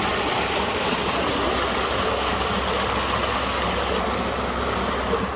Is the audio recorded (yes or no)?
yes